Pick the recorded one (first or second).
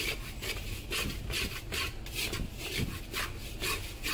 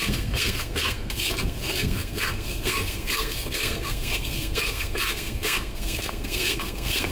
first